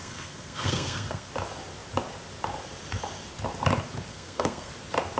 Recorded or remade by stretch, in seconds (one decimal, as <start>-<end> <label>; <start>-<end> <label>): 0.0-1.3 remade; 1.3-4.1 recorded; 4.1-4.7 remade; 4.7-5.2 recorded